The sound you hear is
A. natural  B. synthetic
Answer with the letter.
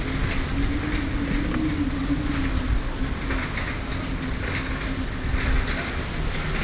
A